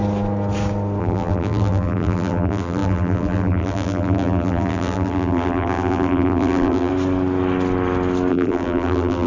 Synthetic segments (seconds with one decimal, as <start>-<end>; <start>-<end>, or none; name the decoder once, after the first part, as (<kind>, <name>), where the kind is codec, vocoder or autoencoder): 1.0-6.9 (vocoder, BigVGAN v2); 8.3-9.3